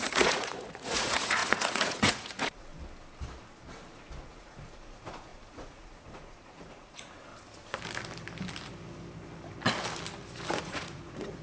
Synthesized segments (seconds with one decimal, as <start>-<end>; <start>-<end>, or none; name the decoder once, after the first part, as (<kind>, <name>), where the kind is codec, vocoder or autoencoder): 0.0-2.7 (vocoder, Vocos); 4.3-7.3; 10.6-11.4